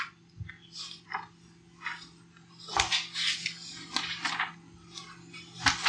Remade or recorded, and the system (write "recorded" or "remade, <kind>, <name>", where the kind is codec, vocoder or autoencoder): recorded